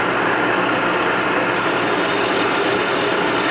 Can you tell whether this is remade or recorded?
recorded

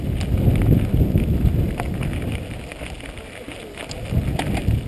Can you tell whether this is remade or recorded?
recorded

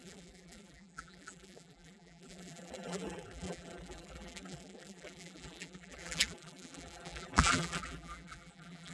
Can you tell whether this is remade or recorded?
remade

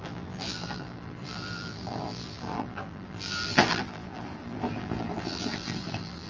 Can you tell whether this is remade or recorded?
remade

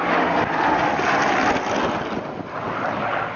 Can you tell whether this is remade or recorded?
recorded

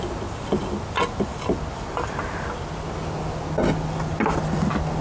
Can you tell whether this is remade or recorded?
recorded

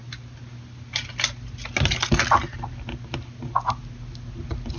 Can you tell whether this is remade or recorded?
recorded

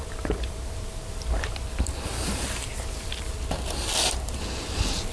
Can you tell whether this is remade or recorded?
remade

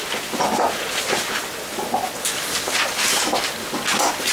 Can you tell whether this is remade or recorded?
recorded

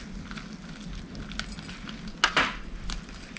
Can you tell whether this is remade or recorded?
recorded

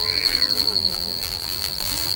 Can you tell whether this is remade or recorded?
remade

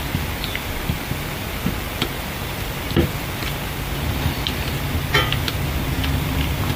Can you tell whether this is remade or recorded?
remade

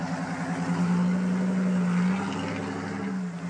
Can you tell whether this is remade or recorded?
recorded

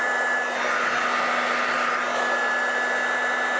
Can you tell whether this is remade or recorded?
recorded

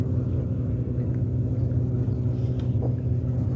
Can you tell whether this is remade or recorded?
recorded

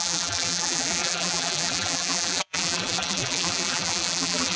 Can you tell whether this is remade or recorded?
remade